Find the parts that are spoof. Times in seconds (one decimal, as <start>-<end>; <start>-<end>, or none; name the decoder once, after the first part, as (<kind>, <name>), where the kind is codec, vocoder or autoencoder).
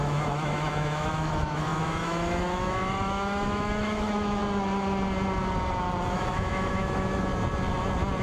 0.0-4.4 (autoencoder, DAC-VAE); 6.1-7.3